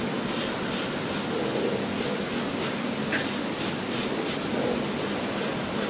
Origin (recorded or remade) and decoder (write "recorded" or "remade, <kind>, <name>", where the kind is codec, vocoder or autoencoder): recorded